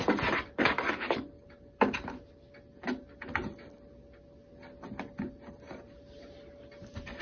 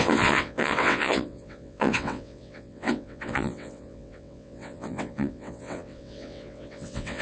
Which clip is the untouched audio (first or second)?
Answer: first